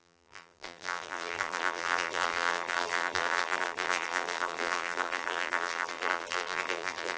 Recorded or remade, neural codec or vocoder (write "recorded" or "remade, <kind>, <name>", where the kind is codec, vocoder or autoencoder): remade, vocoder, BigVGAN v2